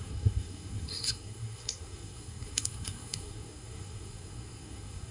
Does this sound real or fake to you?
fake